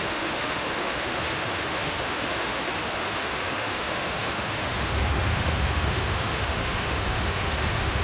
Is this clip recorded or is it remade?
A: remade